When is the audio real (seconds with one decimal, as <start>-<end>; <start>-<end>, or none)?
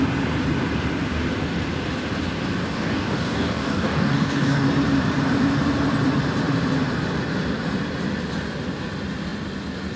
0.0-2.6; 4.7-10.0